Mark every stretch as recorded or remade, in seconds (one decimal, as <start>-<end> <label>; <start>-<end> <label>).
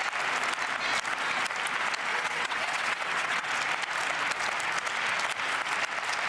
0.0-2.1 recorded; 2.1-3.5 remade; 3.5-6.3 recorded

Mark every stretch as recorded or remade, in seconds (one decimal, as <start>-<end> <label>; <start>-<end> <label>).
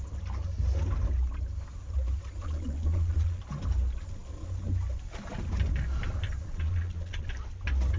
0.0-2.4 recorded; 2.4-3.4 remade; 3.4-6.4 recorded; 6.4-7.3 remade; 7.3-8.0 recorded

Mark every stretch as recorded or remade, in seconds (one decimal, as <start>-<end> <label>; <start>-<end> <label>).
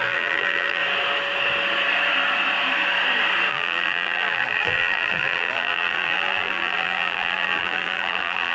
0.0-0.8 remade; 0.8-3.5 recorded; 3.5-8.5 remade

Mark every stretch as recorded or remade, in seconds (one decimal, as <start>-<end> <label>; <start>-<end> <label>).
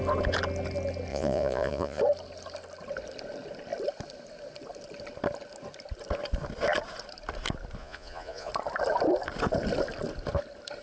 0.0-1.1 recorded; 1.1-2.0 remade; 2.0-7.8 recorded; 7.8-8.5 remade; 8.5-10.8 recorded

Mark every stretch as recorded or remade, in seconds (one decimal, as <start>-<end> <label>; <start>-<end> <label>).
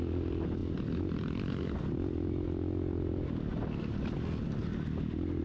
0.0-5.4 recorded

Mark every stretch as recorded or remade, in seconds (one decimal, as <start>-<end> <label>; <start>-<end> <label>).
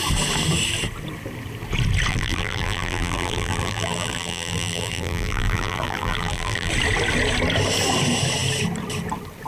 0.0-2.1 recorded; 2.1-6.7 remade; 6.7-9.5 recorded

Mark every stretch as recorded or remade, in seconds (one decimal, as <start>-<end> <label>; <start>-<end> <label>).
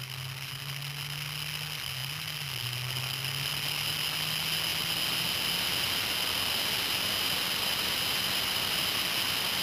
0.0-9.6 recorded